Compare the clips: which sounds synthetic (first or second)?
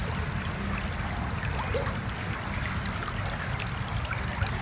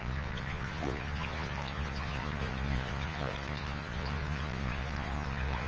second